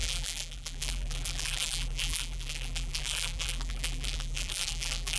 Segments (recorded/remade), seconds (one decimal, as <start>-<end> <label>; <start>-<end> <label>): 0.0-5.2 remade